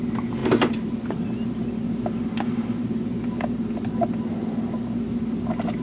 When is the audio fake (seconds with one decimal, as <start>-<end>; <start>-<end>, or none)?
none